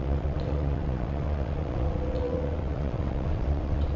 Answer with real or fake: fake